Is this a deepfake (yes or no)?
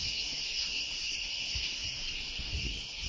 yes